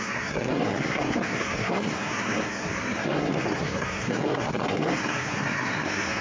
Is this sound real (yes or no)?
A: no